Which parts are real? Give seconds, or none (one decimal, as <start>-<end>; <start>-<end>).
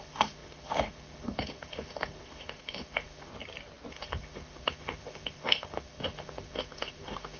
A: 3.3-3.9